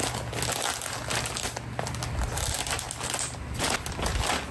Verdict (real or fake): real